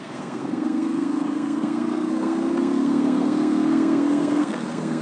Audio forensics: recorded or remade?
remade